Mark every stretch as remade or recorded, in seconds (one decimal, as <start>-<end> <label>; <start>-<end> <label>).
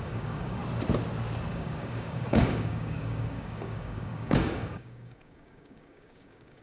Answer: 0.0-0.6 remade; 0.6-1.5 recorded; 1.5-6.6 remade